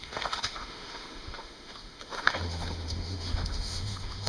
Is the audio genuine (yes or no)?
no